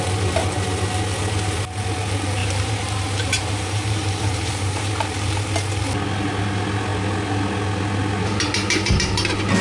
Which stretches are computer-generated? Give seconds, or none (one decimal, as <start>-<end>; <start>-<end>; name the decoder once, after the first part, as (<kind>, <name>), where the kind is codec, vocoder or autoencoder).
2.4-4.9 (vocoder, BigVGAN v2)